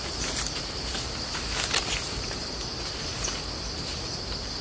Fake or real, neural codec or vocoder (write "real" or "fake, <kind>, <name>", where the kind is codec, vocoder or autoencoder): real